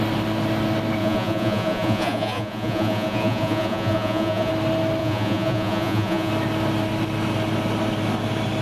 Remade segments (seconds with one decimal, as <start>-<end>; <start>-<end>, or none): 1.0-4.5; 5.0-6.3